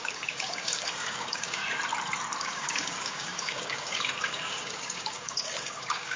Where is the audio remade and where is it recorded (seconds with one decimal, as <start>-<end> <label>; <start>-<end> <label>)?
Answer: 0.0-1.6 remade; 1.6-2.4 recorded; 2.4-6.2 remade